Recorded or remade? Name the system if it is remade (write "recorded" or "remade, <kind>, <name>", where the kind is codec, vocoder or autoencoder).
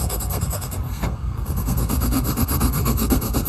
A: remade, codec, SNAC